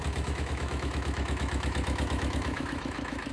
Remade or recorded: remade